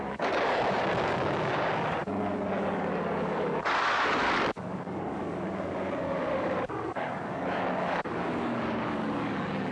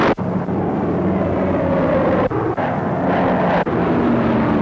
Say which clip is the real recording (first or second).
second